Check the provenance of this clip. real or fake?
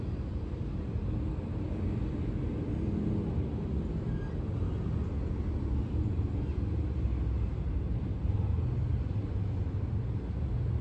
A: real